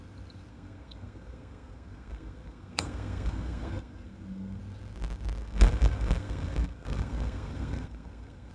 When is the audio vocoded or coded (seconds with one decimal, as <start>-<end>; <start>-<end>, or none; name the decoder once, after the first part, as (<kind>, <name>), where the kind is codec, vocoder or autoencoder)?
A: 0.5-4.6 (codec, SNAC); 5.4-8.5